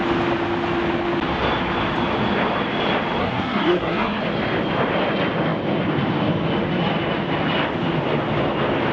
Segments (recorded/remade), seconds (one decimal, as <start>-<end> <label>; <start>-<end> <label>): 0.0-3.2 recorded; 3.2-4.2 remade; 4.2-8.9 recorded